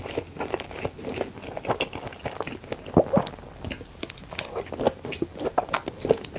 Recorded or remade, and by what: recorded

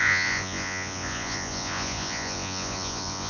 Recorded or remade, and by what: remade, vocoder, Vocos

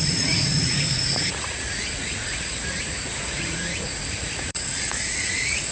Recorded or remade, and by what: remade, vocoder, Vocos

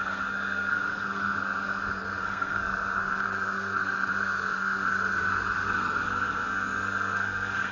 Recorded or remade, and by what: remade, codec, SNAC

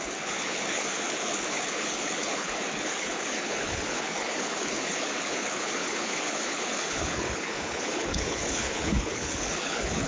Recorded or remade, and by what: remade, codec, HILCodec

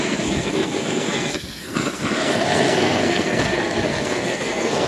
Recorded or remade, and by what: remade, codec, SNAC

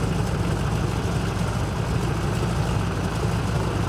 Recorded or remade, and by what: recorded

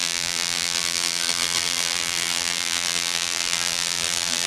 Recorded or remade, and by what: remade, vocoder, BigVGAN v2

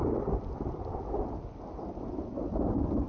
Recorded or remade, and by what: recorded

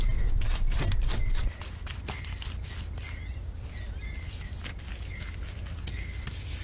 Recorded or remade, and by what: recorded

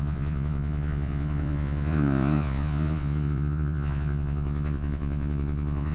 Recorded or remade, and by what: remade, vocoder, Vocos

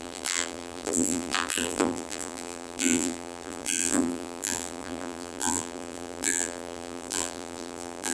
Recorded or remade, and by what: remade, vocoder, BigVGAN v2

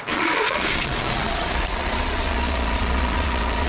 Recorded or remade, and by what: remade, vocoder, Vocos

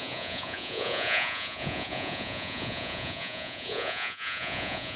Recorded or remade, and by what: remade, vocoder, Vocos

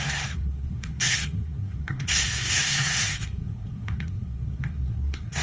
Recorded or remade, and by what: remade, codec, SNAC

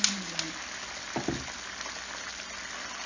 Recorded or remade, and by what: recorded